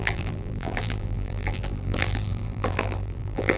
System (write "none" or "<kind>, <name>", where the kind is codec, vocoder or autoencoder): vocoder, BigVGAN v2